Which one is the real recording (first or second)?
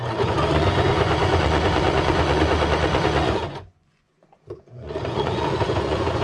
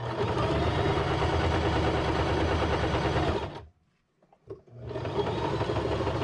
second